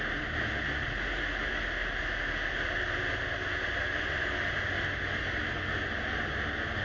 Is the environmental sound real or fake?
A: real